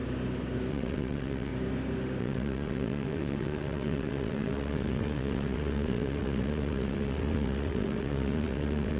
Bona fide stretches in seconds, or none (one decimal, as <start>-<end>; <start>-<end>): 0.0-0.7; 1.5-2.2